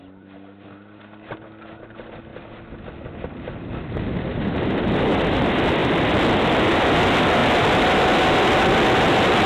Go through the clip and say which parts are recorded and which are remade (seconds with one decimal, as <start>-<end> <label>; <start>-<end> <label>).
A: 0.0-5.8 recorded; 5.8-6.8 remade; 6.8-9.5 recorded